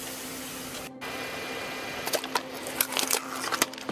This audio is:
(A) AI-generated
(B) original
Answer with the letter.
B